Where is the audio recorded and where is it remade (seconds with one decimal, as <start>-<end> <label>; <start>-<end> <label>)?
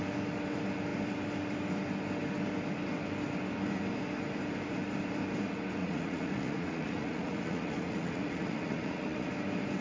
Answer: 0.0-5.8 recorded; 5.8-9.3 remade; 9.3-9.8 recorded